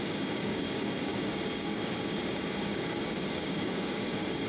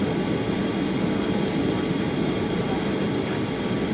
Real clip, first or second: second